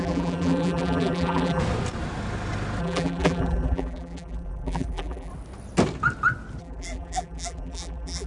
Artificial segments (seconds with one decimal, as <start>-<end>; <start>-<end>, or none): 0.0-1.6; 2.8-5.3; 6.6-8.3

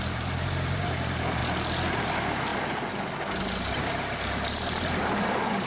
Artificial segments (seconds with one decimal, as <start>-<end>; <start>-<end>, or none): 0.0-1.4; 1.9-2.5; 3.2-5.7

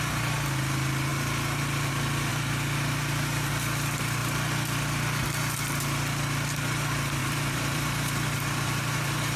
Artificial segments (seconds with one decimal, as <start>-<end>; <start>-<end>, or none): 2.3-3.5; 7.2-9.4

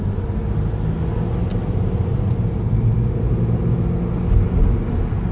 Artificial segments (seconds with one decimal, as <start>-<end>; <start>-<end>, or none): none

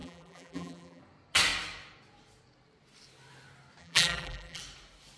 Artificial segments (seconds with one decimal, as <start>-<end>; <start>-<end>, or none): 0.0-1.0; 3.8-4.6